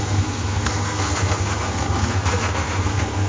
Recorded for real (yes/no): no